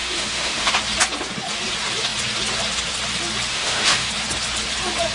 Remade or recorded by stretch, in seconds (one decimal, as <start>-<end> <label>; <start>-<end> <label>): 0.0-0.7 remade; 0.7-3.5 recorded; 3.5-4.1 remade; 4.1-5.1 recorded